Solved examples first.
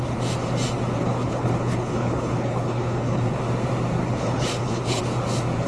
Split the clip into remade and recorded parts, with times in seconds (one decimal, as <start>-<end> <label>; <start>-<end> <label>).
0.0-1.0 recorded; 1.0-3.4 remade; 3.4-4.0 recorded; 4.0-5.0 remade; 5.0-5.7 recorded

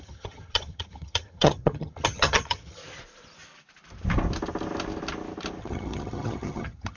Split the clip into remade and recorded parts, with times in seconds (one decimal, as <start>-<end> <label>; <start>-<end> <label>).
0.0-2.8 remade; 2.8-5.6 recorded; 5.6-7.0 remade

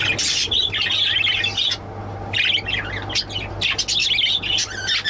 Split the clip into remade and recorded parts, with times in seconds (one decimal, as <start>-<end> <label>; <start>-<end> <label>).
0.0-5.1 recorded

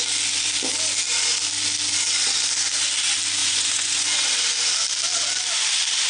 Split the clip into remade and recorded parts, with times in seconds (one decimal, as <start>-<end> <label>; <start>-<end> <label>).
0.0-3.4 recorded; 3.4-4.3 remade; 4.3-6.1 recorded

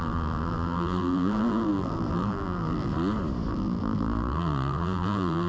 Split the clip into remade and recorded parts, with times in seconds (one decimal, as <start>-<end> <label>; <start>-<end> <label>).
0.0-2.9 remade; 2.9-3.5 recorded; 3.5-5.5 remade